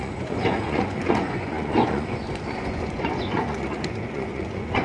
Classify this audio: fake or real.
fake